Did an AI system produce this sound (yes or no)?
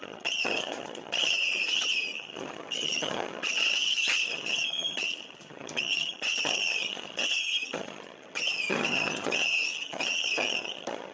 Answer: yes